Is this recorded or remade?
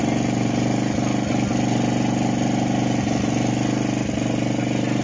recorded